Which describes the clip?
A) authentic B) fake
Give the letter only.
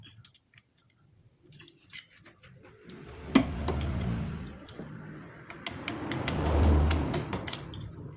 A